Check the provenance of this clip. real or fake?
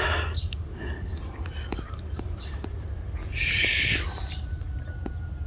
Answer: real